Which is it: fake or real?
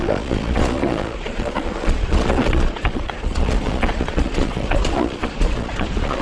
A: fake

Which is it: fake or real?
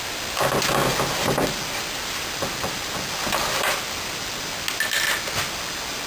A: real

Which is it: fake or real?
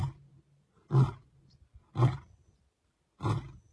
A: real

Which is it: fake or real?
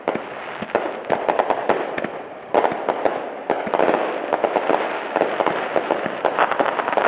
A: real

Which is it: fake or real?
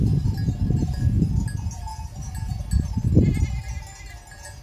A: real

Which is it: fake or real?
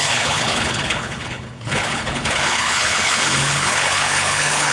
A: fake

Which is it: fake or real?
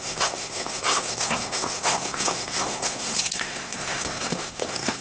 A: fake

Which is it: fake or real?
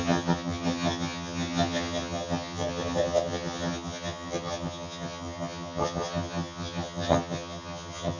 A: fake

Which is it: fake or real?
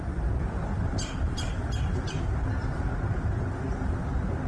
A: real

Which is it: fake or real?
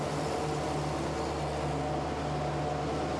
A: real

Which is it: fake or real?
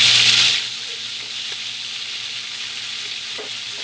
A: real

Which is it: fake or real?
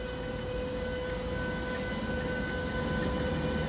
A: real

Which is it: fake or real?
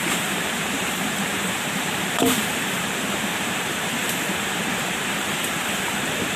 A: fake